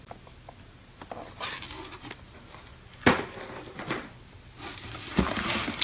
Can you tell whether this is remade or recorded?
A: recorded